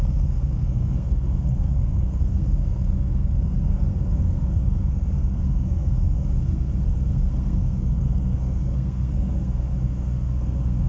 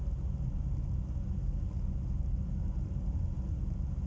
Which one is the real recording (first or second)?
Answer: second